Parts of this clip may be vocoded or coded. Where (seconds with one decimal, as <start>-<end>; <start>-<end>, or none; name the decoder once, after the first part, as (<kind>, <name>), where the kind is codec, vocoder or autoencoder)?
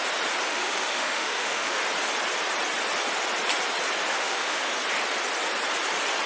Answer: 0.5-1.8 (autoencoder, DAC-VAE); 4.1-4.7